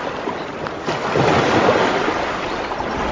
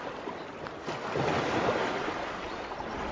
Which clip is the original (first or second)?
second